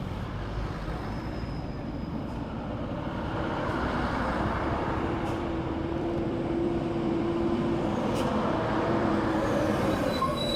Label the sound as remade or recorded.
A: remade